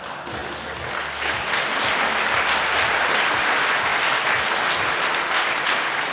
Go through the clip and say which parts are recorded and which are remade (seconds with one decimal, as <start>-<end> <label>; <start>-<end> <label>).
0.0-6.1 recorded